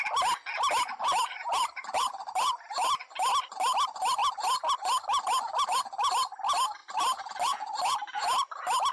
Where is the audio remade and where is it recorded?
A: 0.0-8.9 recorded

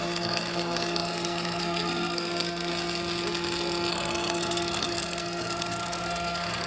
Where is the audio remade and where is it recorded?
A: 0.0-2.7 remade; 2.7-3.9 recorded; 3.9-6.7 remade

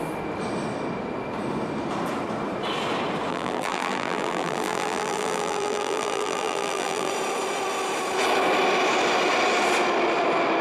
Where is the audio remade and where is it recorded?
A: 0.0-3.3 recorded; 3.3-7.1 remade; 7.1-10.6 recorded